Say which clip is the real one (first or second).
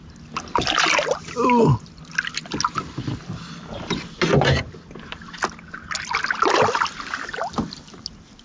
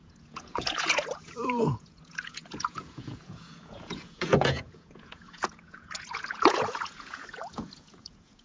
first